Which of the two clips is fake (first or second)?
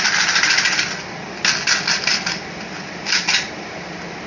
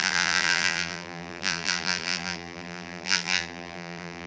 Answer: second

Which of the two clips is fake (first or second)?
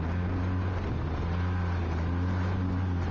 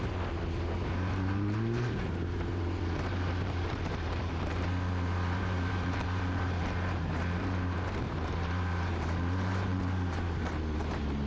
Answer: second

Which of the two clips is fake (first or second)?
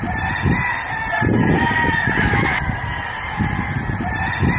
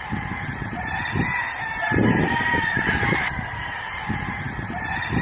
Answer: second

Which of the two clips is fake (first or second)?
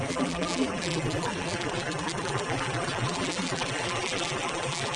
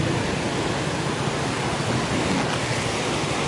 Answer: first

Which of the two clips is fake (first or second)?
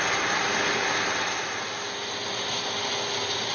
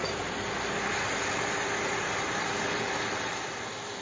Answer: second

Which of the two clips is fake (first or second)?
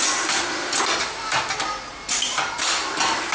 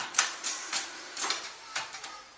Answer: second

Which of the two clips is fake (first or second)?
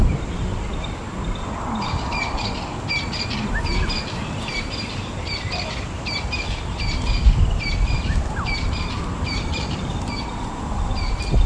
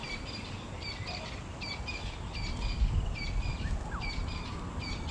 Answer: first